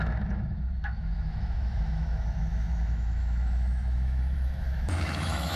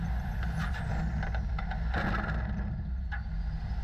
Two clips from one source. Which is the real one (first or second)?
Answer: second